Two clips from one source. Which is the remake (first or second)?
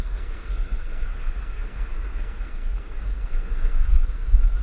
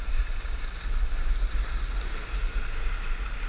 first